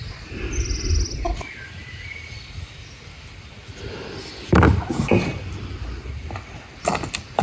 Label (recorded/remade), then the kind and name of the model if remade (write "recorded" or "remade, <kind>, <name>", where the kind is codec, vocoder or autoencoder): recorded